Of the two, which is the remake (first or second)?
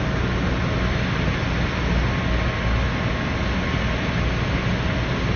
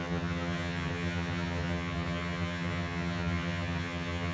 second